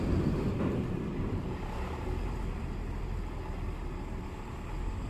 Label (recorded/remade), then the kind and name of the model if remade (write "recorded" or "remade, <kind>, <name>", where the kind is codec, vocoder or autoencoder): recorded